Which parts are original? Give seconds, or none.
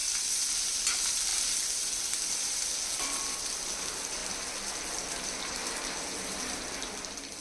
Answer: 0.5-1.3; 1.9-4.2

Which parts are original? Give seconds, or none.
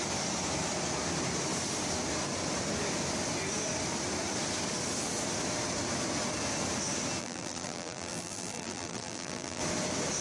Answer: 0.0-7.2; 9.6-10.2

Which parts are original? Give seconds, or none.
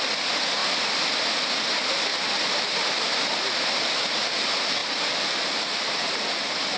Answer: 0.0-0.6; 1.7-2.1; 4.0-4.8; 6.2-6.8